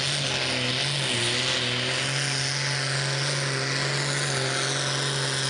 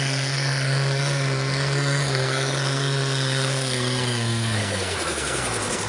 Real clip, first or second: first